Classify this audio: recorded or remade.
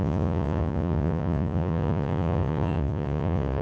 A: remade